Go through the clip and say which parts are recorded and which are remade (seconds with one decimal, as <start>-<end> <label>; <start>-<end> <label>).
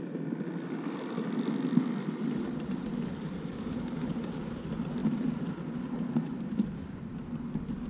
0.0-7.9 recorded